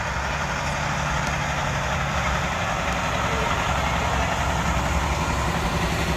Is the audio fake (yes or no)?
no